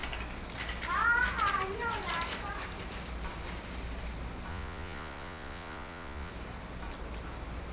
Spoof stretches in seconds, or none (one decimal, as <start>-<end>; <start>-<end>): 4.5-6.3